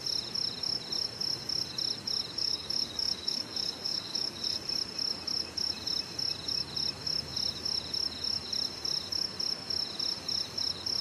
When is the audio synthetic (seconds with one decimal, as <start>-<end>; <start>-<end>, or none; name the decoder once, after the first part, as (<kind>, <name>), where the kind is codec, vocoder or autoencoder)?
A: 2.4-4.6 (codec, DAC)